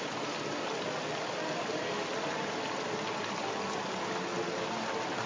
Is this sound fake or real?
real